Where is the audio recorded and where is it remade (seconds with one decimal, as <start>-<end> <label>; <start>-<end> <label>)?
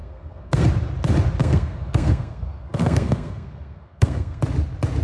0.0-0.6 remade; 0.6-1.4 recorded; 1.4-4.4 remade; 4.4-5.0 recorded